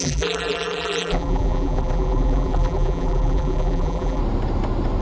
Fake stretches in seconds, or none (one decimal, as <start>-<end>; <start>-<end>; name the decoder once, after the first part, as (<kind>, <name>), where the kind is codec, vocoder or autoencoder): 0.0-4.2 (vocoder, BigVGAN v2)